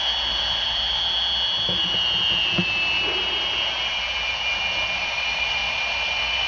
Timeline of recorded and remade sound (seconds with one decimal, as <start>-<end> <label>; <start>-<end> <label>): 0.0-6.5 recorded